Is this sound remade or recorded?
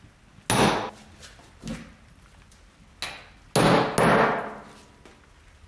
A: recorded